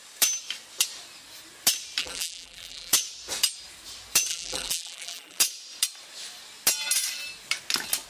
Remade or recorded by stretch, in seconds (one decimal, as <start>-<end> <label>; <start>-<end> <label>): 0.0-2.0 recorded; 2.0-2.9 remade; 2.9-4.3 recorded; 4.3-5.4 remade; 5.4-8.1 recorded